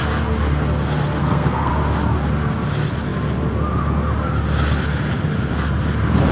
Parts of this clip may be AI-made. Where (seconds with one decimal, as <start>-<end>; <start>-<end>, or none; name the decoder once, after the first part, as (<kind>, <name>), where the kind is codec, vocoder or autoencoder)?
1.2-1.7 (codec, SNAC)